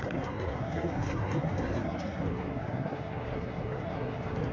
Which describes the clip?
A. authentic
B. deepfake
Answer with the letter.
B